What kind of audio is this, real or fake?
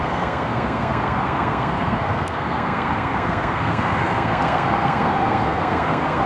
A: fake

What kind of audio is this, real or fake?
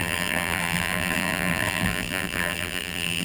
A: fake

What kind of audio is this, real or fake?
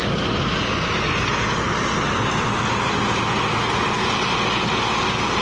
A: real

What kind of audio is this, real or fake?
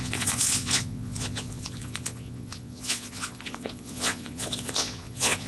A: fake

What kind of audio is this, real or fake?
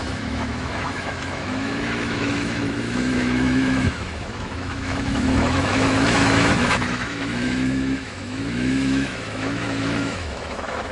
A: fake